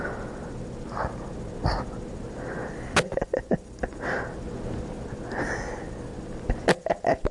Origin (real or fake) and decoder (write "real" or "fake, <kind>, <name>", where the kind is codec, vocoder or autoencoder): real